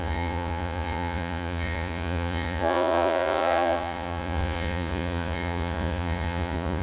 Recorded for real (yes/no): no